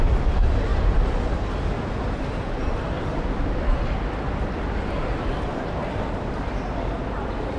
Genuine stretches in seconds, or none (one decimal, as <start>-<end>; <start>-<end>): 0.0-7.6